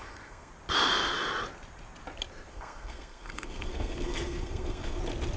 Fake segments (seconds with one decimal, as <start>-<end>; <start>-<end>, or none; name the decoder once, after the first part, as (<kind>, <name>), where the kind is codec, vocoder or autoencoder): 0.0-0.5 (codec, SNAC); 2.5-5.0